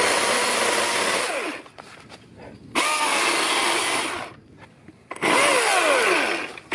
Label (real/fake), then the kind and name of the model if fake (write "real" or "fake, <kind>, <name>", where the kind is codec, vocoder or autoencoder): real